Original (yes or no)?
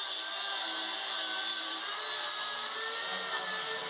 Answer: yes